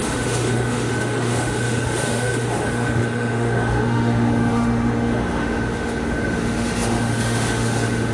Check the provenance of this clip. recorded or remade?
remade